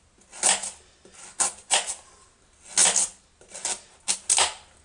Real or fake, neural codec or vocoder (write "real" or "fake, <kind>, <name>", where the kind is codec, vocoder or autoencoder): real